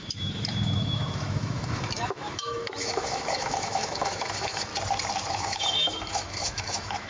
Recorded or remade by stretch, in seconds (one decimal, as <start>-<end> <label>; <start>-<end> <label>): 0.0-4.7 remade; 4.7-5.3 recorded; 5.3-7.1 remade